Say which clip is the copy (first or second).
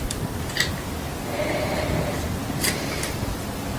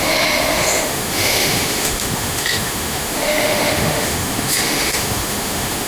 second